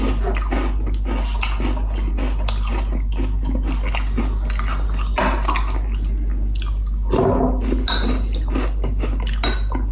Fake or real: real